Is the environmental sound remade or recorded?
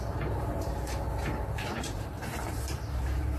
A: remade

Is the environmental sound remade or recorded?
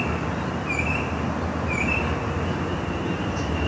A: remade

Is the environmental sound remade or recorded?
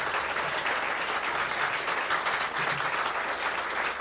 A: recorded